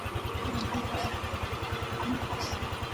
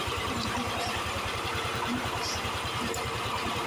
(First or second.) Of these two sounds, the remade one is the second